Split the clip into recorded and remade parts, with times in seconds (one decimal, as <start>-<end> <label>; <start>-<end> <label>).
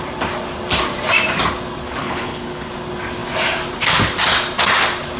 0.0-2.0 recorded; 2.0-2.7 remade; 2.7-5.2 recorded